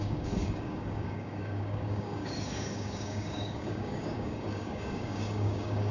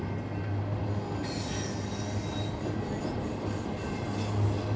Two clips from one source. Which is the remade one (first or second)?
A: first